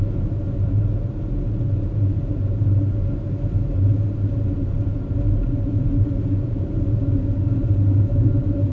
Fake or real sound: fake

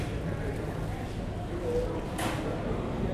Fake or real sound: real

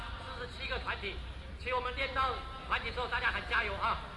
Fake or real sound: real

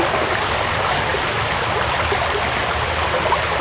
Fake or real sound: real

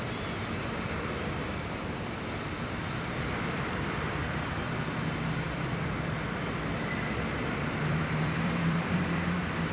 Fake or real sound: fake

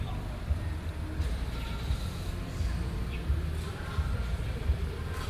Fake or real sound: fake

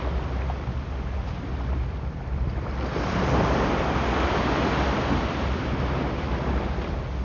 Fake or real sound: real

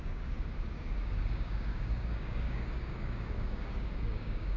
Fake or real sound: fake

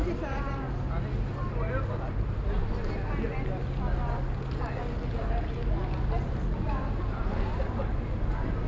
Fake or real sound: real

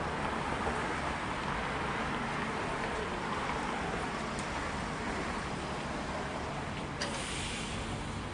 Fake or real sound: real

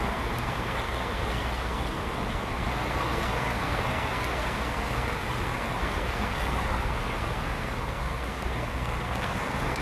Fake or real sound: fake